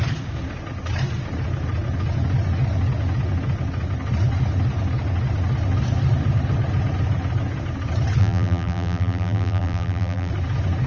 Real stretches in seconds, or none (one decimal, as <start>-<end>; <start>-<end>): 0.0-8.2; 10.3-10.9